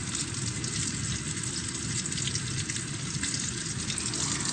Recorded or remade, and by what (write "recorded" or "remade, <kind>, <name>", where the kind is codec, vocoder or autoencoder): recorded